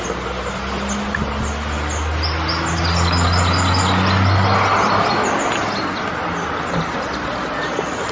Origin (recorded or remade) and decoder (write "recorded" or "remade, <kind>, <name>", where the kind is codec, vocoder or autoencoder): recorded